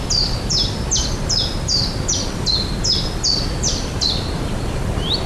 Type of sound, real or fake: real